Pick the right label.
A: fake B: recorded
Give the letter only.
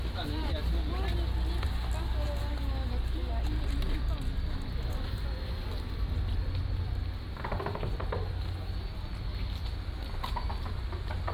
B